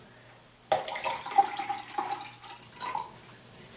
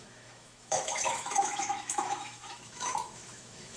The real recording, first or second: first